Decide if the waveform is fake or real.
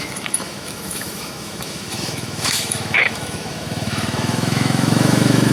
fake